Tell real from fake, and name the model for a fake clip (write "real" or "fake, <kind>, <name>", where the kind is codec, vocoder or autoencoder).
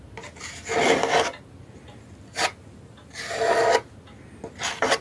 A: real